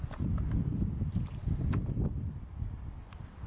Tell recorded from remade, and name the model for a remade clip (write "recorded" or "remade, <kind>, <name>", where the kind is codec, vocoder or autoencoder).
remade, vocoder, BigVGAN v2